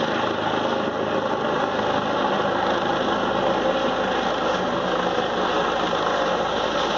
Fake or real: real